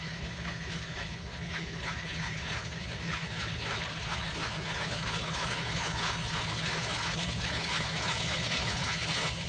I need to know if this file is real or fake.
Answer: fake